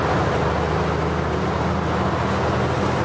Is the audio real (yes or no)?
yes